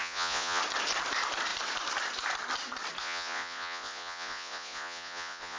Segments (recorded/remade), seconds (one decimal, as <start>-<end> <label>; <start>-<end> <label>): 0.0-0.6 remade; 0.6-3.0 recorded; 3.0-5.6 remade